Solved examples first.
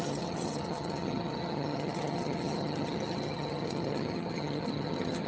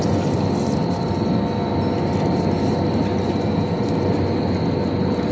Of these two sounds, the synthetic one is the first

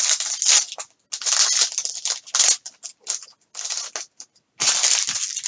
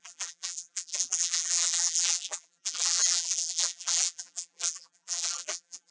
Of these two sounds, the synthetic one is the second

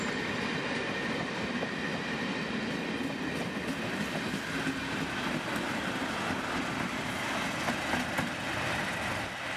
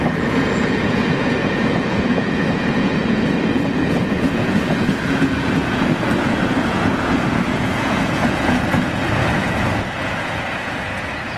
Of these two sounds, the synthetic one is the second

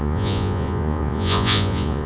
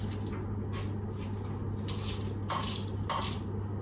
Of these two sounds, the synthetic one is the first